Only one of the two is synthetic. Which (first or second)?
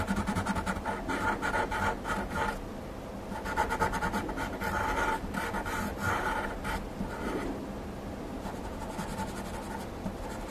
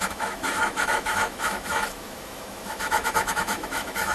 second